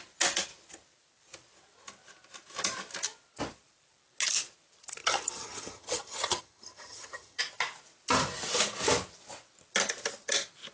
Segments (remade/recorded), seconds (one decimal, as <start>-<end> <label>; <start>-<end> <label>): 0.0-5.0 recorded; 5.0-7.4 remade; 7.4-10.7 recorded